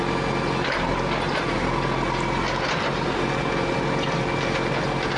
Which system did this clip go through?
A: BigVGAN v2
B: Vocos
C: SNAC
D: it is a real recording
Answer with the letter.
D